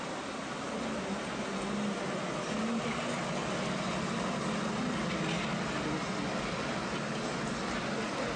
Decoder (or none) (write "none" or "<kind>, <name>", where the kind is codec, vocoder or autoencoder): none